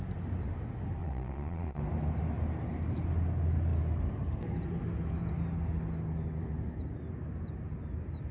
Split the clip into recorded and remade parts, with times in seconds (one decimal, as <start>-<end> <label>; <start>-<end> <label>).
0.0-1.0 recorded; 1.0-1.8 remade; 1.8-8.3 recorded